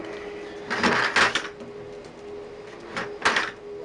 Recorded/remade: recorded